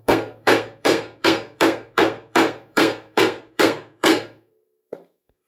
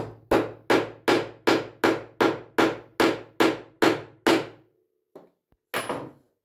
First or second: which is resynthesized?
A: first